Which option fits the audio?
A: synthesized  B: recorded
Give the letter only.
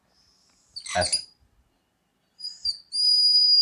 B